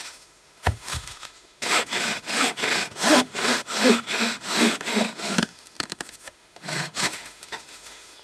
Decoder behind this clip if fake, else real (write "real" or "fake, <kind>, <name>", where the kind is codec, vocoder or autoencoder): fake, autoencoder, DAC-VAE